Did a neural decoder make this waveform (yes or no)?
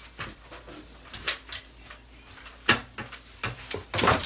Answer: no